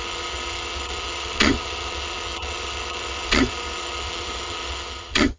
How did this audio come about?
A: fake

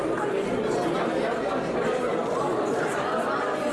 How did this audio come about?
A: real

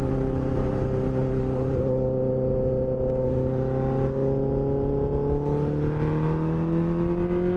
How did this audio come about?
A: real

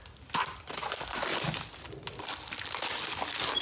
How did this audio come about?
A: real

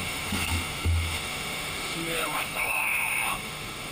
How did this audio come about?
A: fake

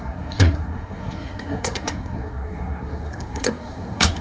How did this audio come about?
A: fake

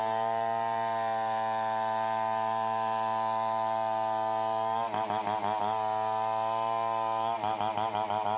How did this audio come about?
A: real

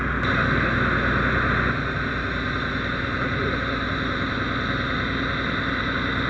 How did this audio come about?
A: real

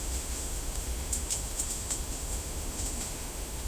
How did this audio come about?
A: fake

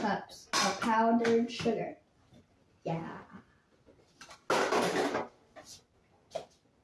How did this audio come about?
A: real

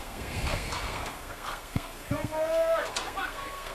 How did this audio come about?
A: fake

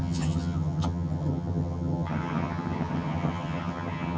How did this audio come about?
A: fake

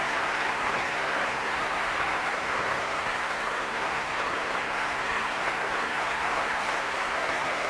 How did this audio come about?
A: fake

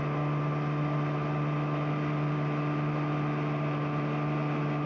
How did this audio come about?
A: real